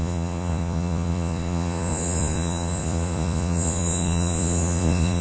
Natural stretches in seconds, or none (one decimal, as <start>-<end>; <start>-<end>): none